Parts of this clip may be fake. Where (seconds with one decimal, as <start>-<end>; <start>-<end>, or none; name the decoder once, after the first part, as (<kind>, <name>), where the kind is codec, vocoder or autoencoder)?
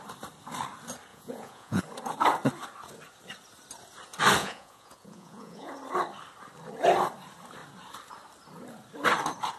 1.1-1.8 (vocoder, Vocos); 4.4-5.7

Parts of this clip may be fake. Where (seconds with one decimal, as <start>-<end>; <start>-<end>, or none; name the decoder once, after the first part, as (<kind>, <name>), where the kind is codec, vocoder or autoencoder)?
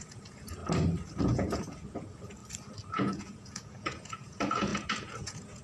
0.0-0.6 (vocoder, Vocos); 1.2-2.4; 2.9-5.6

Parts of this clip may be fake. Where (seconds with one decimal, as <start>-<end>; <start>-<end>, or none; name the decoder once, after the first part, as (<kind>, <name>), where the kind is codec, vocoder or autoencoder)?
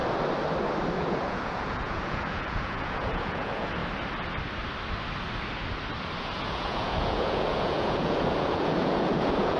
0.9-3.8 (vocoder, Vocos); 6.2-9.6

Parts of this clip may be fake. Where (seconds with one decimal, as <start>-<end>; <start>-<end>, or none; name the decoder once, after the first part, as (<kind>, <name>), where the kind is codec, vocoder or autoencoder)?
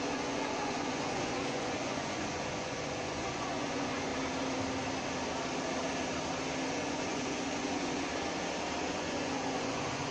0.0-4.1 (vocoder, Vocos); 6.7-8.1; 8.9-10.1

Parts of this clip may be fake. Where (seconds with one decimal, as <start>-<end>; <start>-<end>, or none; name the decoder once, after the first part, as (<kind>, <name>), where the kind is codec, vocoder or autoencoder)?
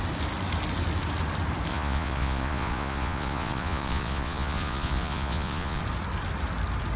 1.7-5.8 (vocoder, Vocos)